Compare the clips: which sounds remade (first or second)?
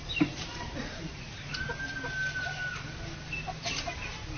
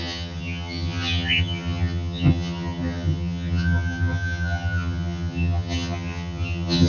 second